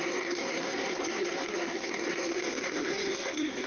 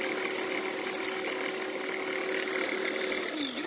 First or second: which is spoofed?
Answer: first